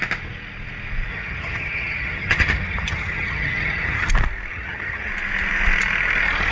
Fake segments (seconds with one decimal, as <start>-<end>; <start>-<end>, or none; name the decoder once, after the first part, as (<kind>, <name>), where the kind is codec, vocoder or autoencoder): 1.1-4.1 (vocoder, HiFi-GAN); 4.5-5.1